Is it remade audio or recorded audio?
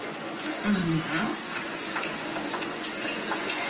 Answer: remade